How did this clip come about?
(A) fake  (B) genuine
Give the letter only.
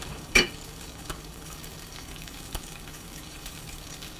A